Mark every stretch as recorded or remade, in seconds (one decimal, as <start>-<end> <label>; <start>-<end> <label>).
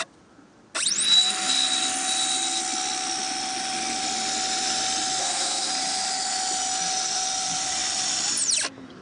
0.0-5.2 recorded; 5.2-5.7 remade; 5.7-9.0 recorded